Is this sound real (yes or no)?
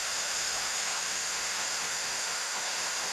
no